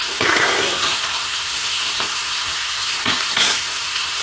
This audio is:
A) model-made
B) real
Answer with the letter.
A